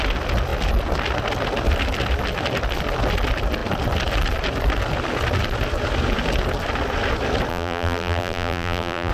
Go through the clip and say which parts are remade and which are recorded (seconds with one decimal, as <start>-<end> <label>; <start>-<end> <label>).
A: 0.0-7.5 recorded; 7.5-9.1 remade

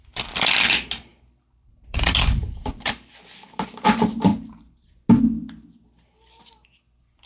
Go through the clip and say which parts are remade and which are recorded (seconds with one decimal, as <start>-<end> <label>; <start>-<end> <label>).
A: 0.0-1.1 recorded; 1.1-3.1 remade; 3.1-4.3 recorded; 4.3-4.9 remade; 4.9-7.3 recorded

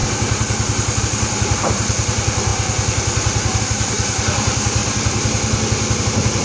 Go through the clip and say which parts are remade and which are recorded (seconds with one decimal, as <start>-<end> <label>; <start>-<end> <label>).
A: 0.0-1.0 recorded; 1.0-4.8 remade; 4.8-6.0 recorded; 6.0-6.4 remade

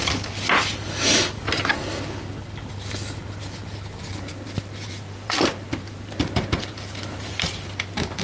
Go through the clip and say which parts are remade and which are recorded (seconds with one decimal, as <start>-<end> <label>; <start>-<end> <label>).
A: 0.0-4.0 recorded; 4.0-8.2 remade

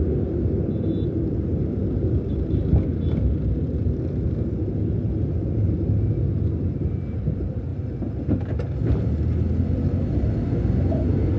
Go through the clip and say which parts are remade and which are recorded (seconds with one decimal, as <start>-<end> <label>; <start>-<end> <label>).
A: 0.0-11.4 recorded

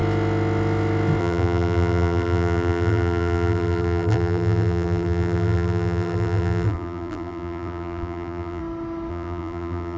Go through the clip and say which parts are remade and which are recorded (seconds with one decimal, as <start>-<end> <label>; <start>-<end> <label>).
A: 0.0-1.2 recorded; 1.2-8.6 remade; 8.6-9.1 recorded; 9.1-10.0 remade

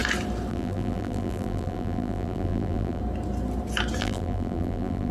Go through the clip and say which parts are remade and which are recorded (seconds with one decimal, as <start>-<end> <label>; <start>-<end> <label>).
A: 0.0-0.5 recorded; 0.5-3.0 remade; 3.0-4.0 recorded; 4.0-5.1 remade

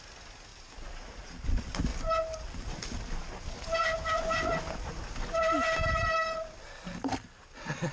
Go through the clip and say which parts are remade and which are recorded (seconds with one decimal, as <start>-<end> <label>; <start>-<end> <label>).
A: 0.0-0.5 recorded; 0.5-1.2 remade; 1.2-7.9 recorded